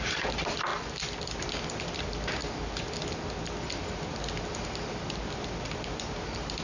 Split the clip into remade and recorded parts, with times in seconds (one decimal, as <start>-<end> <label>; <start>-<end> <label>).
0.0-6.6 recorded